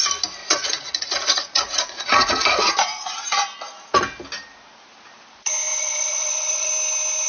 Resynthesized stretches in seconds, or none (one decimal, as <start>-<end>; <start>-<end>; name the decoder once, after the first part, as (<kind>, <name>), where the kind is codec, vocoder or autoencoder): 0.4-4.0 (vocoder, Vocos); 5.7-6.7